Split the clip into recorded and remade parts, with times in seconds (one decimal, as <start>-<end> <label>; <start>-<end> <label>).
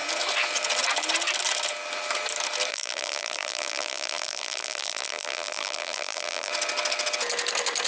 0.0-2.7 recorded; 2.7-6.5 remade; 6.5-7.9 recorded